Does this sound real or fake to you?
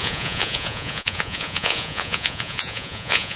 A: fake